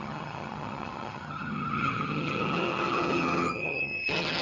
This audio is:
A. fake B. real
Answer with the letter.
A